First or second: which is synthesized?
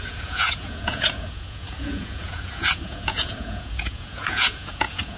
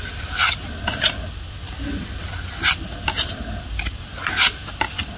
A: first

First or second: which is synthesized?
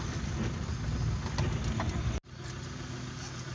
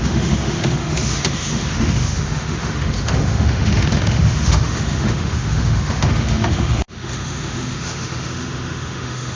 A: second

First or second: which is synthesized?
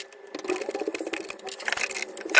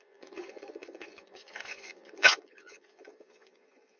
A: second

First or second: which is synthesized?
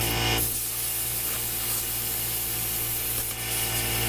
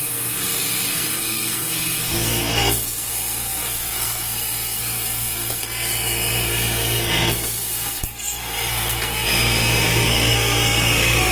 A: second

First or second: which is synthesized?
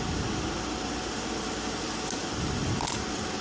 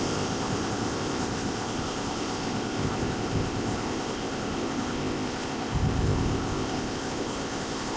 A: second